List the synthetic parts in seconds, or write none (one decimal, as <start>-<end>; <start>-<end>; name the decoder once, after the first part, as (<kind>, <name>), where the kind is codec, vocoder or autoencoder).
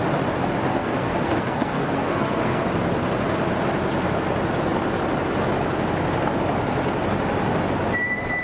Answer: 0.7-2.6 (codec, SNAC)